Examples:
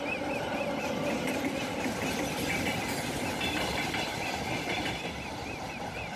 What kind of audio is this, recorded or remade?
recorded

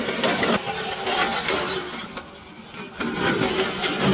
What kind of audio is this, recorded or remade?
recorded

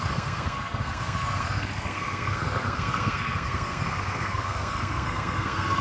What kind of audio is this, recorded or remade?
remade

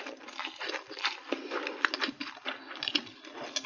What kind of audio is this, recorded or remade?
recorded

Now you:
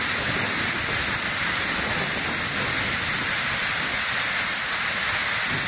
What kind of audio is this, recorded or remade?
recorded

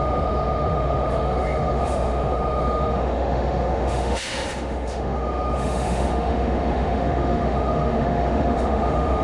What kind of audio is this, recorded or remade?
remade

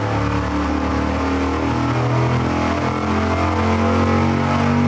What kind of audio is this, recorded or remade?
recorded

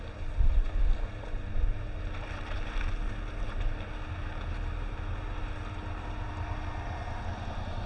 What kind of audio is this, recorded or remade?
recorded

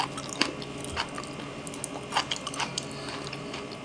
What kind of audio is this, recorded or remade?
recorded